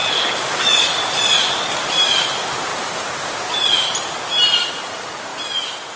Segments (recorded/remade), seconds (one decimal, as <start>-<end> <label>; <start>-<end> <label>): 0.0-1.0 recorded; 1.0-5.3 remade; 5.3-6.0 recorded